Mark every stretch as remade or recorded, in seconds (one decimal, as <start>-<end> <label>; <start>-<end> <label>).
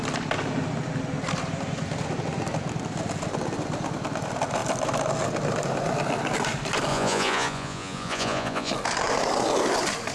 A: 0.0-6.9 recorded; 6.9-8.7 remade; 8.7-10.1 recorded